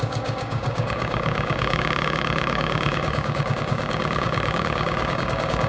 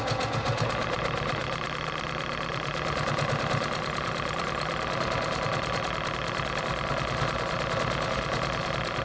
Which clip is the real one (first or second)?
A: second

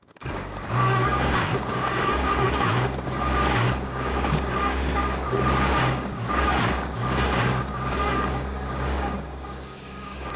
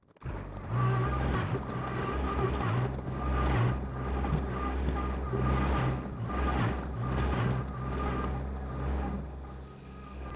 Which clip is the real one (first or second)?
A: second